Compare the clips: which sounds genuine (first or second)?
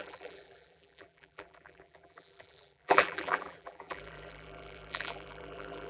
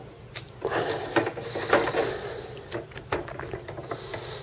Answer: second